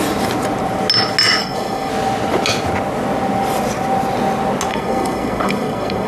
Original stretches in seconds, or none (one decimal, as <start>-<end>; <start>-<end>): 0.0-1.4; 1.9-4.7